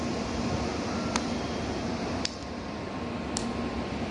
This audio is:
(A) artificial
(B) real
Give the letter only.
A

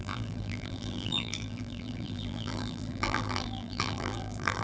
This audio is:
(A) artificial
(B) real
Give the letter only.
A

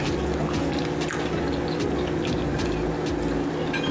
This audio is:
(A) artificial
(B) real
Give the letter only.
B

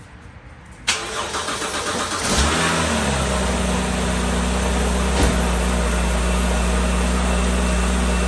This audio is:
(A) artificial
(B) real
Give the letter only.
B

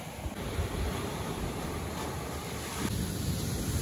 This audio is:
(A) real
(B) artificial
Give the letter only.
A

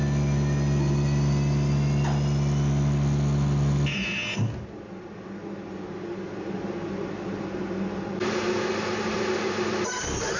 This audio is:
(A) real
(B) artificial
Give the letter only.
A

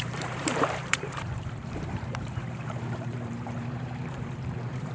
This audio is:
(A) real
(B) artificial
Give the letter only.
B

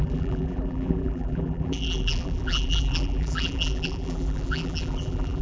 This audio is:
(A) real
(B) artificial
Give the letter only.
B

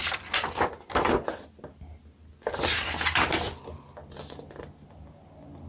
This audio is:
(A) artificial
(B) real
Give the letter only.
B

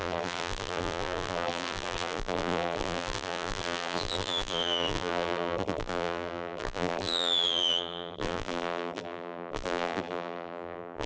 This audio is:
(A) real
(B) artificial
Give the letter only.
B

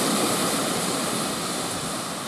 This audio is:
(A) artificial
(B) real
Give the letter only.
A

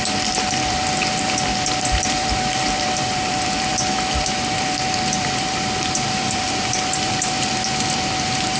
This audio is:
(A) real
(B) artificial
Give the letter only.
B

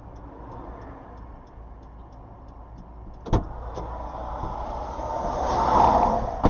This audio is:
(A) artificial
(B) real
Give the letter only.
B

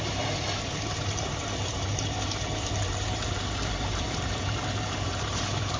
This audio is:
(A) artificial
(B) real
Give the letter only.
A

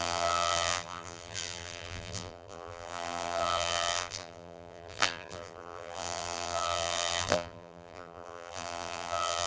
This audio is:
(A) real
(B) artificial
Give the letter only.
B